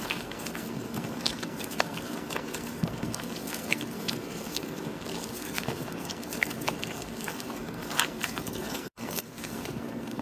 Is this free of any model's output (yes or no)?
no